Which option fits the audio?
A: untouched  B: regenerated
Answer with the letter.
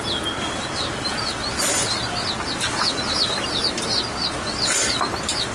A